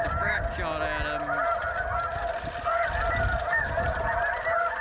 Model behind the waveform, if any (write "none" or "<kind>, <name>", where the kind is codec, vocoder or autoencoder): none